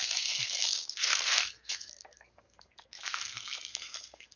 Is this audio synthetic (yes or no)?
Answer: yes